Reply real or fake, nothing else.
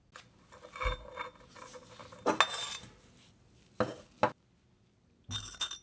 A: real